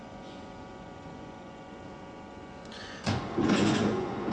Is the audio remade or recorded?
remade